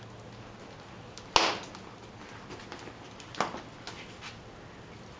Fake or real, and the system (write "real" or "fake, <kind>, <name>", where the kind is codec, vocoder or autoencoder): real